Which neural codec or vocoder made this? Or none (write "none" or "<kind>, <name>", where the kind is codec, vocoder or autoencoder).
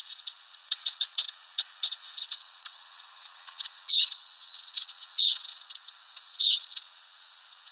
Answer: vocoder, WaveNeXt